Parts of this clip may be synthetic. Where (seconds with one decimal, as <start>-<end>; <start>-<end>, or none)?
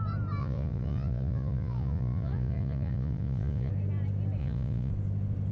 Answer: 0.4-3.7; 4.4-4.9